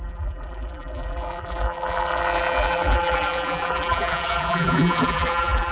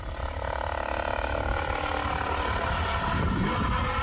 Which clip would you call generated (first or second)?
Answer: first